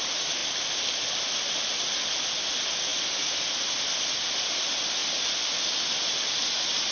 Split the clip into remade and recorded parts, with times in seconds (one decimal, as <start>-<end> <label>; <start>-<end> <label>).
0.0-6.9 recorded